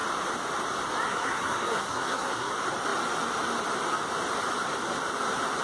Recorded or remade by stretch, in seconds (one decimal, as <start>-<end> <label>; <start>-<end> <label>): 0.0-1.1 recorded; 1.1-2.5 remade; 2.5-5.6 recorded